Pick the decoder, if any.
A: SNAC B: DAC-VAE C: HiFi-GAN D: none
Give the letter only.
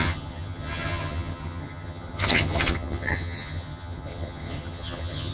C